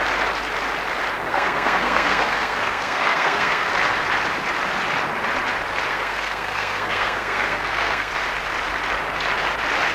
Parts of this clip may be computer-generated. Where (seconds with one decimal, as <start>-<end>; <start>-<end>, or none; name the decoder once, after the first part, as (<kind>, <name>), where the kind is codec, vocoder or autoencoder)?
1.3-3.7 (codec, SNAC); 5.9-8.1